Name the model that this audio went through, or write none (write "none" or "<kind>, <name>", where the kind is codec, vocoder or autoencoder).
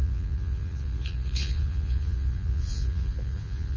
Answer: vocoder, Vocos